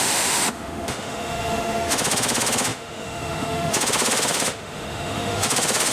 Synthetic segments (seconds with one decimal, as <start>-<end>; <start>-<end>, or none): 0.0-5.9